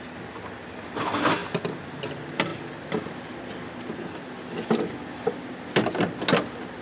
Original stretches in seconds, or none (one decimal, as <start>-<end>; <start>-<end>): 0.0-6.8